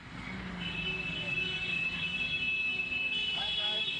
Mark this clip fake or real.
fake